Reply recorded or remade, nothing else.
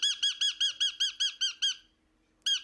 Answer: recorded